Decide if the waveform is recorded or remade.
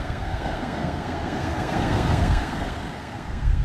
remade